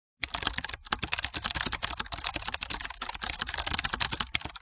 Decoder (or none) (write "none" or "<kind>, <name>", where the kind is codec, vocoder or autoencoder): none